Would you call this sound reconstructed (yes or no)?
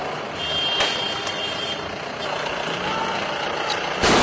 no